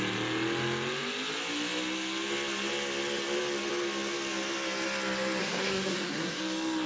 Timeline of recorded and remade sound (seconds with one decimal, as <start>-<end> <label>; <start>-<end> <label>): 0.0-5.4 recorded; 5.4-6.4 remade; 6.4-6.9 recorded